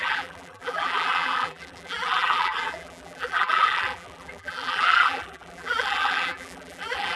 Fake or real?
fake